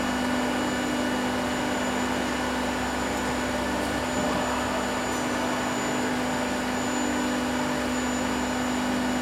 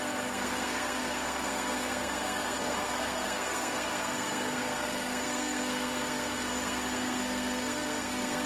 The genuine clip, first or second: first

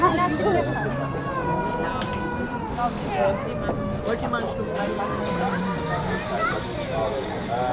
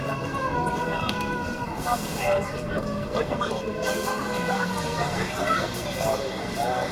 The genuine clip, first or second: first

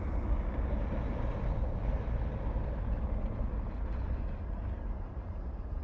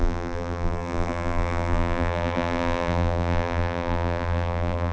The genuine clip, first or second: first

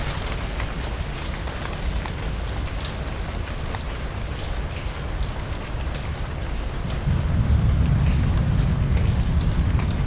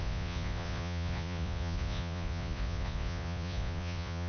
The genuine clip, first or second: first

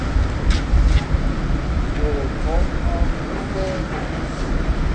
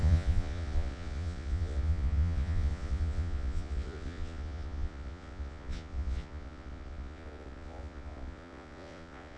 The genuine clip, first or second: first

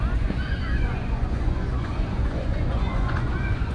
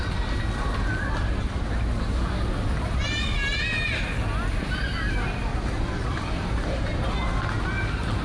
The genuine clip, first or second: second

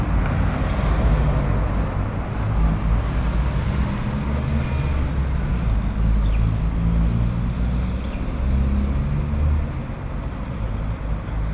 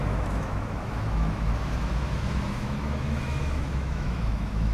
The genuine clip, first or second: first